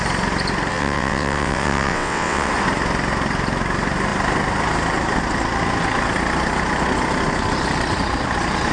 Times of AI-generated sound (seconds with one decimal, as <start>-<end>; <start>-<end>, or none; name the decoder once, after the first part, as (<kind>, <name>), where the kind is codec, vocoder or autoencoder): 0.7-2.5 (vocoder, WaveNeXt)